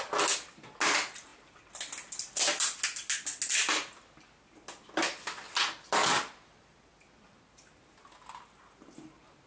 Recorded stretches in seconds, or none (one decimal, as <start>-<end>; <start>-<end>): 0.0-9.5